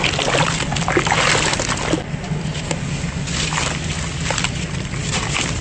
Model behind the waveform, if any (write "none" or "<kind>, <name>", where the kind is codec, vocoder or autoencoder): none